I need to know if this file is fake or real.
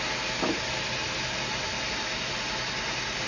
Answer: real